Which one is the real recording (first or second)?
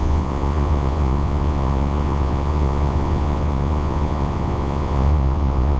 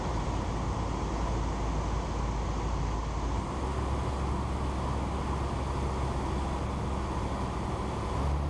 second